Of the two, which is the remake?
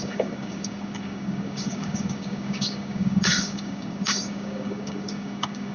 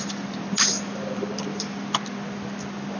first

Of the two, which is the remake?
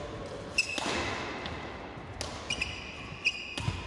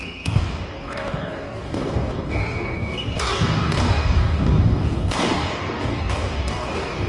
second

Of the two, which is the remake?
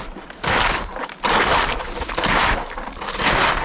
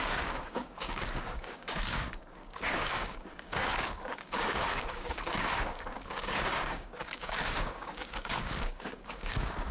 second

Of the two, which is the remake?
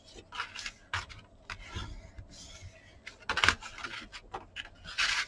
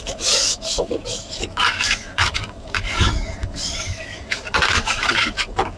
second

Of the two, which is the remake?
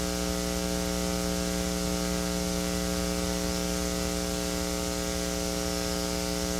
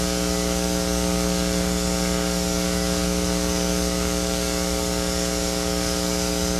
second